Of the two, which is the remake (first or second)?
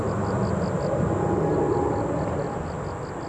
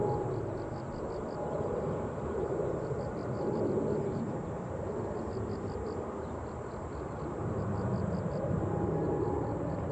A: second